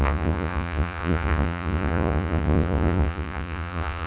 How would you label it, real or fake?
fake